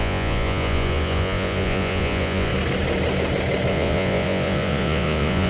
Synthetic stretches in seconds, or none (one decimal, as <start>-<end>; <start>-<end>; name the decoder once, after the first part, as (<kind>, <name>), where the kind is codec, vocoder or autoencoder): 0.0-2.5 (vocoder, Vocos); 3.7-5.5